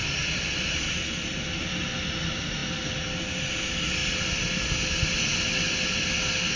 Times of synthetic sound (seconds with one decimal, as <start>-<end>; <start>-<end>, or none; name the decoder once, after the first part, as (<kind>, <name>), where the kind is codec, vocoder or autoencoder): none